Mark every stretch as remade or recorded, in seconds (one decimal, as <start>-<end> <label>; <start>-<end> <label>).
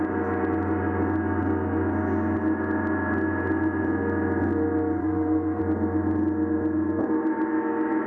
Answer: 0.0-5.0 recorded; 5.0-5.6 remade; 5.6-8.1 recorded